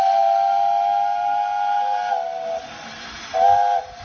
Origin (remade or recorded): recorded